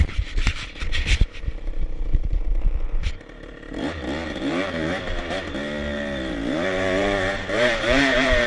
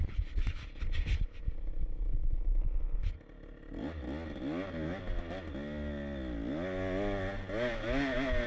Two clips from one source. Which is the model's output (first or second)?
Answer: first